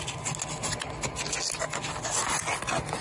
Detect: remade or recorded recorded